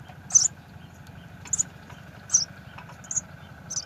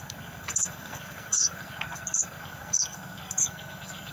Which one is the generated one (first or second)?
second